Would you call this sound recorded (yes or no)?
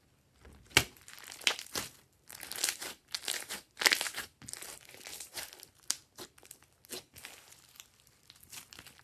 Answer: yes